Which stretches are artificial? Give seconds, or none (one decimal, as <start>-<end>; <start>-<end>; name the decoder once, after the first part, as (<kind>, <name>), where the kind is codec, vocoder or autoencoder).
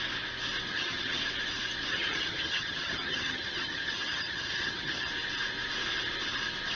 0.7-1.2 (vocoder, HiFi-GAN); 1.9-5.1